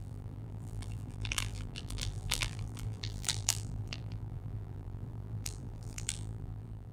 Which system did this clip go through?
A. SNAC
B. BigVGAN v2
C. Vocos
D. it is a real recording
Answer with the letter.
B